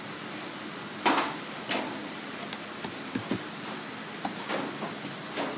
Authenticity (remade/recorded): recorded